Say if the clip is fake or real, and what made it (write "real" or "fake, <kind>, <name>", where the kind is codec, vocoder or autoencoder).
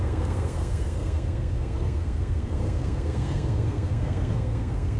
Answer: fake, codec, SNAC